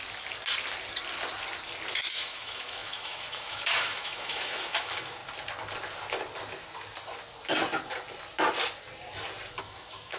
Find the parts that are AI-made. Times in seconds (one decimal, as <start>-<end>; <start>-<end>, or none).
2.1-5.2; 9.6-10.2